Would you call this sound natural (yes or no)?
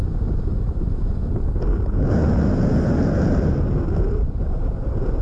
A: yes